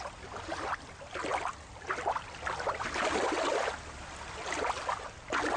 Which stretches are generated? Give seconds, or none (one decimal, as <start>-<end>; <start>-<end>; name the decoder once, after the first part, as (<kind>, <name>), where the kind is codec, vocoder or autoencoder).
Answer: none